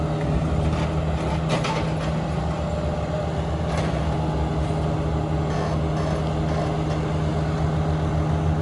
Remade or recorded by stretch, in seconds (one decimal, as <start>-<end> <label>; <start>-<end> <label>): 0.0-8.6 recorded